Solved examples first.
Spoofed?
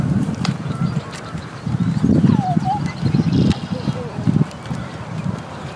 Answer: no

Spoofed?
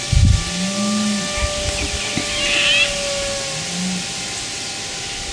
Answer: no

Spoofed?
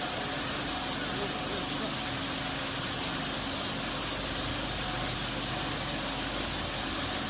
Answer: no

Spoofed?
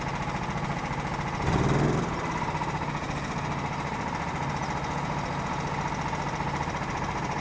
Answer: no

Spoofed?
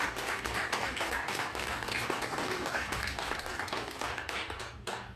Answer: yes